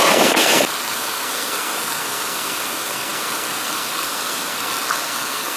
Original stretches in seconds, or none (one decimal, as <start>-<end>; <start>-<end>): none